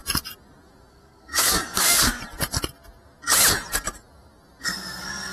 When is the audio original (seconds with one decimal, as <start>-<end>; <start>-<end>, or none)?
0.0-0.9; 2.2-4.6